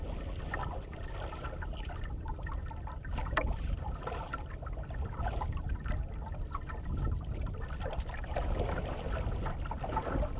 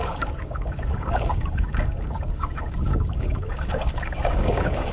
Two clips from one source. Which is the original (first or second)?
first